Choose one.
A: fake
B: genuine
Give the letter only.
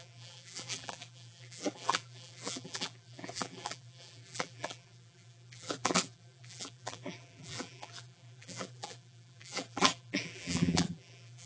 A